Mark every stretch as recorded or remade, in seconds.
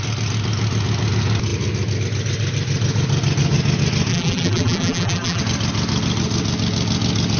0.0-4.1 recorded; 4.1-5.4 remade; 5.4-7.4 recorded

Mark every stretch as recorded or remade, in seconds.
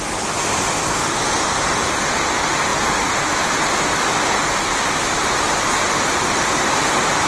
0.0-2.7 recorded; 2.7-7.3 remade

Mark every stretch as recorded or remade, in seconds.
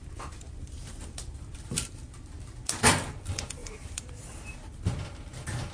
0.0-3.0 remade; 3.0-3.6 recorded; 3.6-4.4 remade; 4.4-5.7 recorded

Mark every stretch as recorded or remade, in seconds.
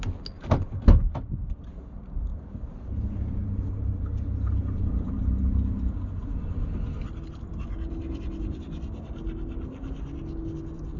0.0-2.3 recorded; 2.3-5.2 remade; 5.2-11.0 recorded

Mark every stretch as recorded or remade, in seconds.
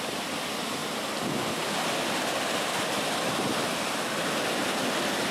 0.0-5.3 recorded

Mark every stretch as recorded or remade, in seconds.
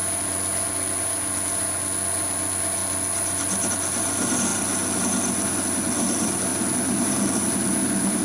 0.0-8.2 recorded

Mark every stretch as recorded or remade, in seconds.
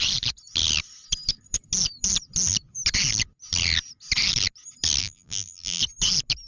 0.0-5.0 recorded; 5.0-5.8 remade; 5.8-6.5 recorded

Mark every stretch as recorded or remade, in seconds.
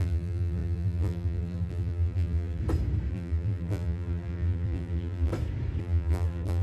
0.0-2.6 remade; 2.6-3.1 recorded; 3.1-5.3 remade; 5.3-5.8 recorded; 5.8-6.6 remade